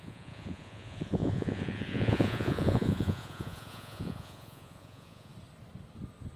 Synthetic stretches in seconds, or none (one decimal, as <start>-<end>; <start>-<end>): 0.0-5.3